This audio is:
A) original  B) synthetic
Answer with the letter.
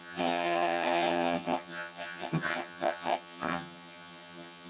B